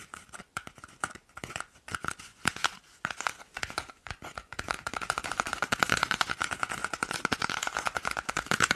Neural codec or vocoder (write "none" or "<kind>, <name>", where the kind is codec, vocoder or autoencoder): vocoder, Vocos